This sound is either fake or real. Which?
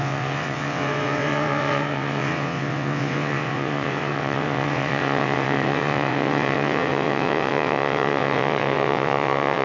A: fake